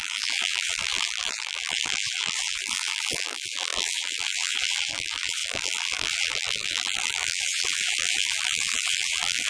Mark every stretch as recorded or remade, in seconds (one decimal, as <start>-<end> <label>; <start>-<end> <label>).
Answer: 0.0-9.5 remade